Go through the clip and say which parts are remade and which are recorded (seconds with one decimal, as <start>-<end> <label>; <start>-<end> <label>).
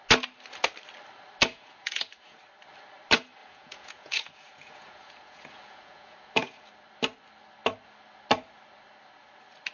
0.0-1.5 recorded; 1.5-2.4 remade; 2.4-3.4 recorded; 3.4-6.7 remade; 6.7-9.7 recorded